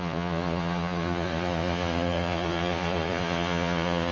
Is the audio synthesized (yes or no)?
yes